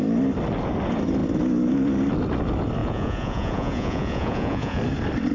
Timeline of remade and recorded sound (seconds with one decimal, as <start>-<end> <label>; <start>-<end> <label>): 0.0-2.8 recorded; 2.8-4.8 remade; 4.8-5.3 recorded